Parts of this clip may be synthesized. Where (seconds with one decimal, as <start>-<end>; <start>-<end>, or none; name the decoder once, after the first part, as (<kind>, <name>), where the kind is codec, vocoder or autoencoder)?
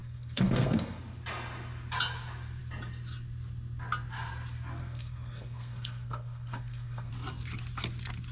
0.0-1.0 (codec, SNAC); 4.8-7.1